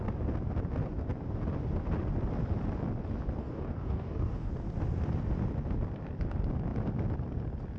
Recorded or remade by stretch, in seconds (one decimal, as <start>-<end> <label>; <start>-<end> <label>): 0.0-3.4 recorded; 3.4-4.5 remade; 4.5-7.8 recorded

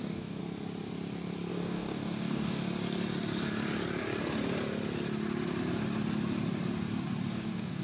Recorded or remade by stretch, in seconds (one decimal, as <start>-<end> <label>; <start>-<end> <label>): 0.0-0.4 remade; 0.4-1.5 recorded; 1.5-2.6 remade; 2.6-7.3 recorded; 7.3-7.8 remade

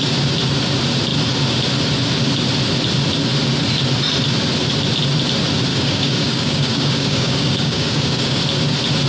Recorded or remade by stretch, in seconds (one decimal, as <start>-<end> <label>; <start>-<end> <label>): 0.0-5.7 recorded; 5.7-8.4 remade; 8.4-9.1 recorded

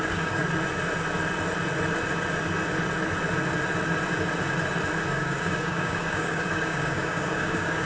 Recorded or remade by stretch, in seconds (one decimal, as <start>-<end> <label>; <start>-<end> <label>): 0.0-0.4 remade; 0.4-5.1 recorded; 5.1-7.9 remade

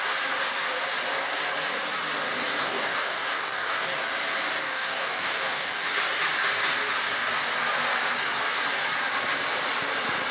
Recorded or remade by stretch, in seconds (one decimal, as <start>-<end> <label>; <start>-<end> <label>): 0.0-2.6 recorded; 2.6-4.0 remade; 4.0-4.6 recorded; 4.6-5.9 remade; 5.9-10.3 recorded